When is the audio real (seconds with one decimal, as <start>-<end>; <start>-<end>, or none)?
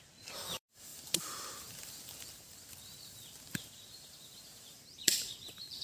none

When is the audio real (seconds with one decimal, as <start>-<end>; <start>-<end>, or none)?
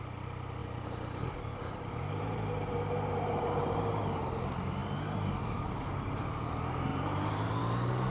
0.0-0.6; 3.8-6.9; 7.6-8.1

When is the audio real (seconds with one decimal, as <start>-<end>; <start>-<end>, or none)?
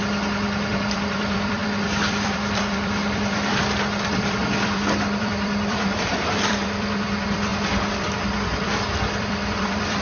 0.0-0.7; 7.5-9.2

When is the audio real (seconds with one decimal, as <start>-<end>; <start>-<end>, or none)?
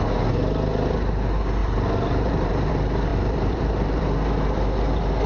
0.0-1.6; 2.7-3.1; 4.0-5.3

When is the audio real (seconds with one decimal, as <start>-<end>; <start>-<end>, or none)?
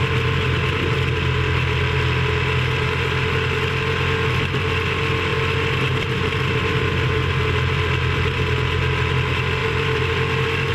0.0-9.6; 10.1-10.7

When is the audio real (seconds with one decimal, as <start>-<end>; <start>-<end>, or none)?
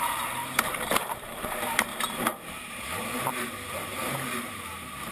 1.9-2.5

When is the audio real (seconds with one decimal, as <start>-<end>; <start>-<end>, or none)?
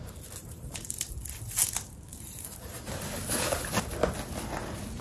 0.0-0.4; 1.2-1.6; 3.0-5.0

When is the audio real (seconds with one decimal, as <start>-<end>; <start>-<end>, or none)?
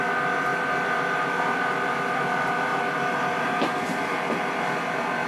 0.0-5.3